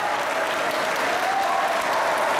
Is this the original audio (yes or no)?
yes